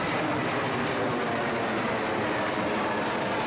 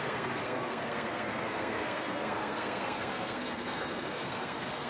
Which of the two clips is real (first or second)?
first